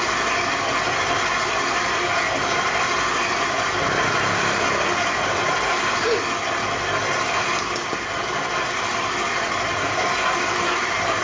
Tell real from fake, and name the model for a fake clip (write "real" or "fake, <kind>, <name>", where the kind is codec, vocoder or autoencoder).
real